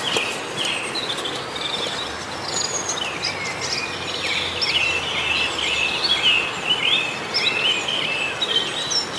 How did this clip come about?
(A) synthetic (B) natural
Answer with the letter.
B